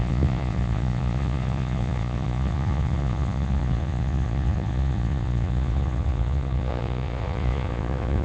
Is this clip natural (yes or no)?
no